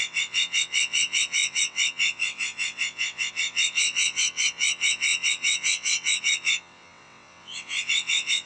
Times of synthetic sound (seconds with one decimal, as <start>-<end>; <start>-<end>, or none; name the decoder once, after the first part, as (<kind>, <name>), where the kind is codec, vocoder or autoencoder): 0.0-8.5 (vocoder, WaveNeXt)